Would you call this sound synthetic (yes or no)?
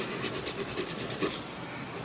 no